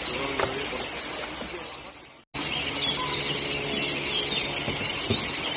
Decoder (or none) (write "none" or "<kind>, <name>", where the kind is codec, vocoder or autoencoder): none